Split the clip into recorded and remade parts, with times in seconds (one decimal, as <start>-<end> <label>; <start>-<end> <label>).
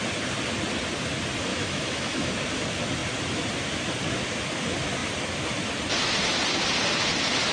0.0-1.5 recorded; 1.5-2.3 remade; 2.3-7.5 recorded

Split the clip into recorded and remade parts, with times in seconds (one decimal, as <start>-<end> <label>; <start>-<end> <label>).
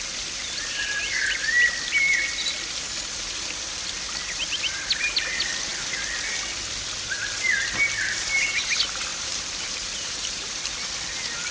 0.0-9.1 recorded; 9.1-10.7 remade; 10.7-11.5 recorded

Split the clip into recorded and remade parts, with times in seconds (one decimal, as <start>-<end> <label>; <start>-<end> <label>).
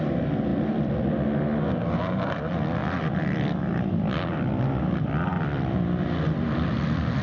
0.0-2.8 recorded; 2.8-7.2 remade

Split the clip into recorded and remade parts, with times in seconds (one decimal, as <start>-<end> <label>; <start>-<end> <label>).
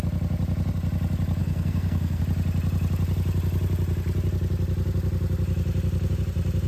0.0-1.4 recorded; 1.4-2.2 remade; 2.2-6.7 recorded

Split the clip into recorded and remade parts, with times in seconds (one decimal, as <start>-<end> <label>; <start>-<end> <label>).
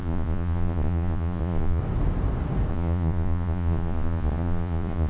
0.0-1.8 remade; 1.8-2.7 recorded; 2.7-5.1 remade